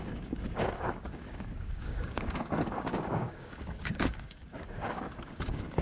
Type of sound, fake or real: fake